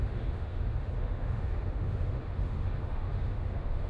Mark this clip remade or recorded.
remade